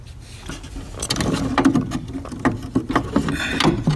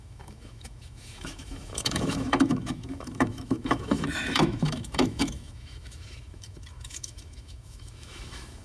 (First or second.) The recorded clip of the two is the first